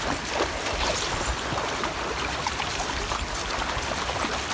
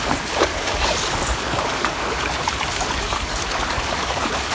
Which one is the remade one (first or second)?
second